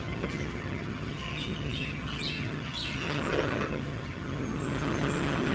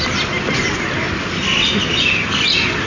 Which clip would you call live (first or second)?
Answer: second